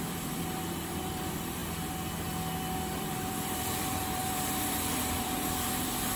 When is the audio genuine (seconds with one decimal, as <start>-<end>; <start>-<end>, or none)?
1.6-2.7

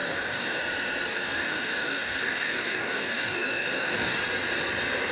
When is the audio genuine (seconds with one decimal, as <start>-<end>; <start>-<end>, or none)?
0.6-1.1; 4.2-5.1

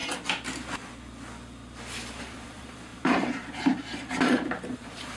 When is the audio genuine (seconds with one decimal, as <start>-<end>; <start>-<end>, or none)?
0.0-2.2

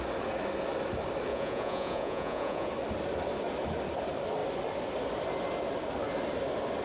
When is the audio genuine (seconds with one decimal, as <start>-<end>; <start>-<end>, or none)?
0.0-1.3; 2.7-6.8

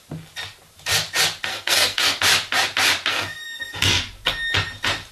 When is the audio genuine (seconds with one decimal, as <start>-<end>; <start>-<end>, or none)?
0.0-1.5; 2.2-3.1; 4.0-5.1

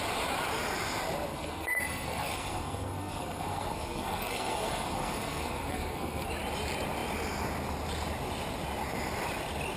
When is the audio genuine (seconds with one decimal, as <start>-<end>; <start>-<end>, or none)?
0.0-1.3; 6.3-9.8

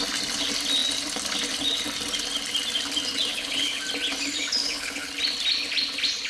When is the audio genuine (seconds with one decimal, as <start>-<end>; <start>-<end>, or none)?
0.0-3.3; 3.8-4.6; 5.1-6.3